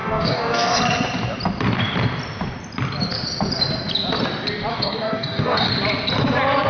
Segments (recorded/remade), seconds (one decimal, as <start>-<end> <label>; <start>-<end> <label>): 0.0-0.8 remade; 0.8-4.7 recorded; 4.7-5.7 remade; 5.7-6.7 recorded